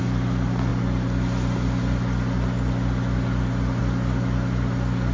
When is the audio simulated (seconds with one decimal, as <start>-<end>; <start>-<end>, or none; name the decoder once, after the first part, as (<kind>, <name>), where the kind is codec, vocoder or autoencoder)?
none